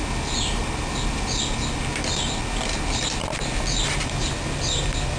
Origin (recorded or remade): recorded